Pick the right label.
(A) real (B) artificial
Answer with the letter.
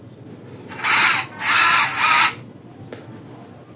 A